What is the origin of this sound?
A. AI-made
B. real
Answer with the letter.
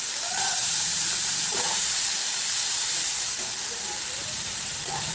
A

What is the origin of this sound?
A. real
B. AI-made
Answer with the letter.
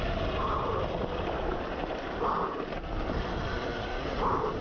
A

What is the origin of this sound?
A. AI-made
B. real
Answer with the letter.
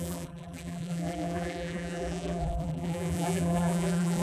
A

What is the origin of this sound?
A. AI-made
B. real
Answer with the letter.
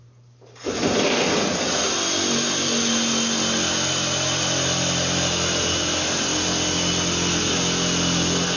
B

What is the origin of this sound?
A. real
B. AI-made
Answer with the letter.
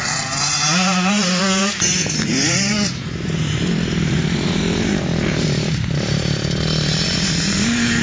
B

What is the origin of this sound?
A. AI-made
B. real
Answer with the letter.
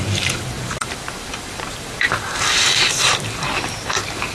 A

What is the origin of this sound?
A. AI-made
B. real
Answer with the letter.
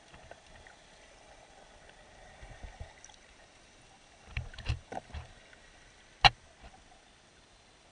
B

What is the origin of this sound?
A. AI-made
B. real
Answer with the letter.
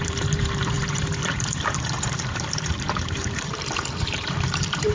A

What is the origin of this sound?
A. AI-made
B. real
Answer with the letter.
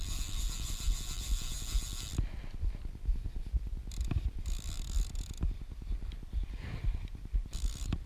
A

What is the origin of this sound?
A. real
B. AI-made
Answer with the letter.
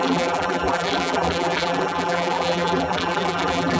B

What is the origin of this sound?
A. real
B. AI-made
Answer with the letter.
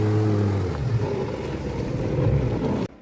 A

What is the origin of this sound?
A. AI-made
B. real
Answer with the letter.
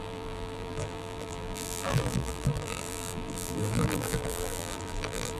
A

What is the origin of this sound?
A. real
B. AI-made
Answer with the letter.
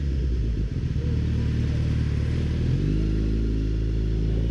A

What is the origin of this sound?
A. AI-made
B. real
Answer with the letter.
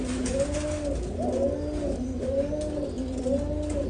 B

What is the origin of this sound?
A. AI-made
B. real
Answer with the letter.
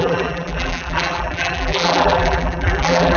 A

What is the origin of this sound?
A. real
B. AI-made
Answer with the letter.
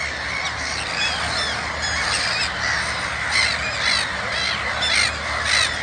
A